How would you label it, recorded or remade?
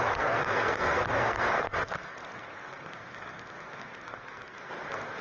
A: remade